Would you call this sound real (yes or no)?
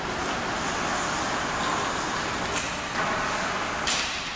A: yes